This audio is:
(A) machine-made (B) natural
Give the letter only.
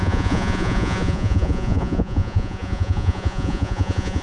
A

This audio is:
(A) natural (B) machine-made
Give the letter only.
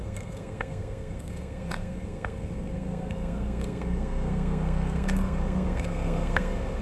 B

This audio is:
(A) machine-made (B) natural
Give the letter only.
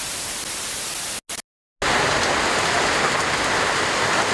B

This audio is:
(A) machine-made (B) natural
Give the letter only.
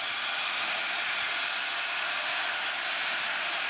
B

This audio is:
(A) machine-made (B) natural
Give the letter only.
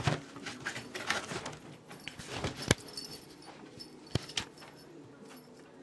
B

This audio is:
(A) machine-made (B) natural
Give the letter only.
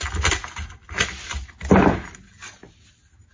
B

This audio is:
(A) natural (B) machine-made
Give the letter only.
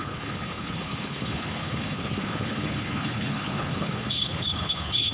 B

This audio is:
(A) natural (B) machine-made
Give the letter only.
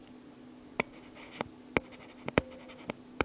A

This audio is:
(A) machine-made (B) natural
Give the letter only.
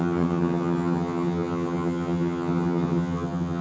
A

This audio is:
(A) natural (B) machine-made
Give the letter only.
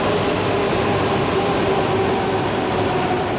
A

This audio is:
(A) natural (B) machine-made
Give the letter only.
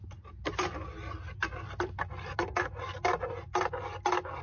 A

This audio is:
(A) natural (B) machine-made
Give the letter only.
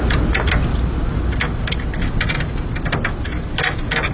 A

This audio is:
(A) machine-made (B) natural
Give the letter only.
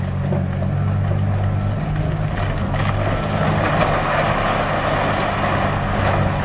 B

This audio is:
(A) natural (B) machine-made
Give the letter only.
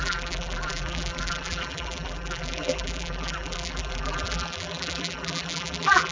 B